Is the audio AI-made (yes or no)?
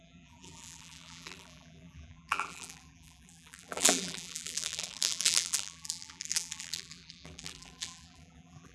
yes